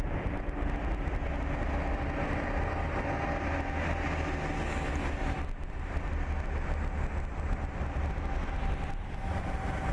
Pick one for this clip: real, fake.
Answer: real